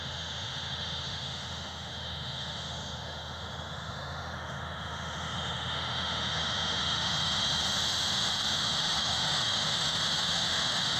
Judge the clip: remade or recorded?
remade